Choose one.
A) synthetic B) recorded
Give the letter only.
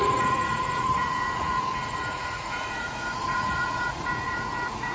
A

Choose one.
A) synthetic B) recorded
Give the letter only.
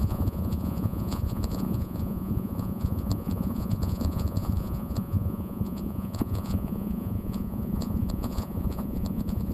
A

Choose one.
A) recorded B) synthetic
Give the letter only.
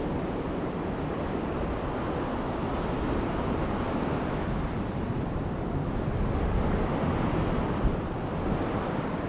A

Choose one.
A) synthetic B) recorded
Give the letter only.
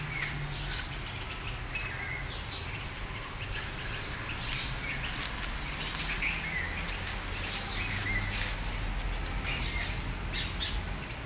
B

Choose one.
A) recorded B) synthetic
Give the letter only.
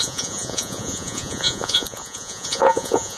B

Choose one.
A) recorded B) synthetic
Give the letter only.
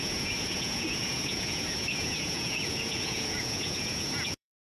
B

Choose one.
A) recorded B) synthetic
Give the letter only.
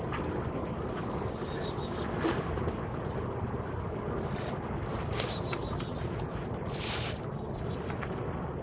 A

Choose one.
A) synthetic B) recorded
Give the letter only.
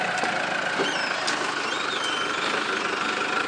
B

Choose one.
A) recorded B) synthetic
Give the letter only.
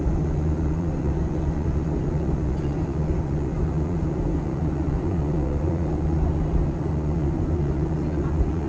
B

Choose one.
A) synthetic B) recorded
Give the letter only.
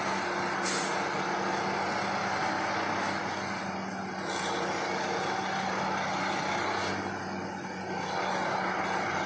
B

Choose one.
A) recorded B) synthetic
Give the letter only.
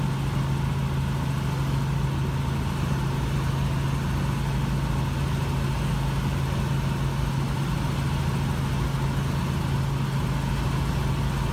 A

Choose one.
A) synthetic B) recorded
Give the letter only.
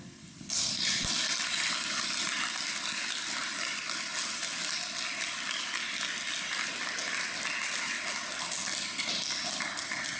B